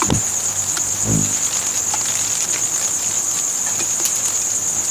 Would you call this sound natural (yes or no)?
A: yes